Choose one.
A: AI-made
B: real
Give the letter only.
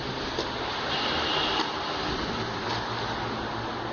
B